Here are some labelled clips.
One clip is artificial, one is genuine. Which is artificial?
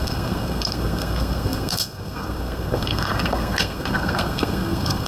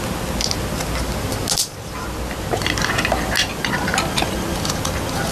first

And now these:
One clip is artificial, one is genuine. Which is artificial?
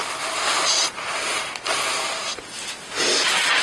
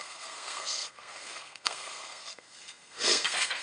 second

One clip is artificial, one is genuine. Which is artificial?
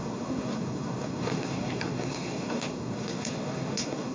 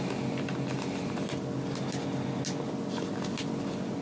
first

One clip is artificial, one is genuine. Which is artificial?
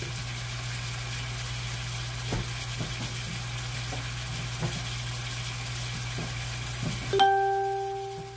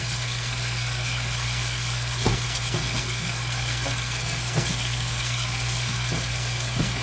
second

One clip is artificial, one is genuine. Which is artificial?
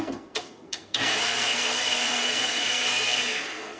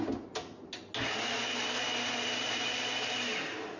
first